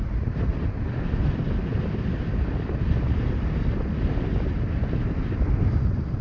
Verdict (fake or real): real